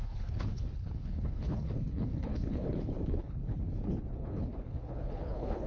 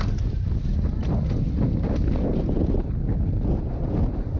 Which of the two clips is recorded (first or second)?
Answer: second